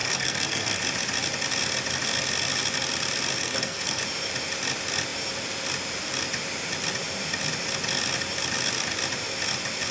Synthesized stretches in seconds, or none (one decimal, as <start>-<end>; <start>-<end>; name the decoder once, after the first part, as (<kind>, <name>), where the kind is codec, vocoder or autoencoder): 0.0-0.8 (codec, SNAC); 3.4-4.0